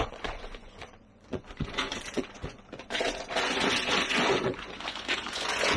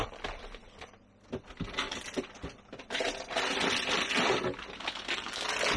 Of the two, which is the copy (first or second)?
first